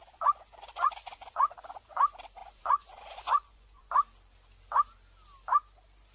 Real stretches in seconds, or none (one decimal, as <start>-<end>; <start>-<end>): 2.0-2.4; 3.9-6.1